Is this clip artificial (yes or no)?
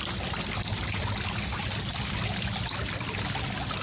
no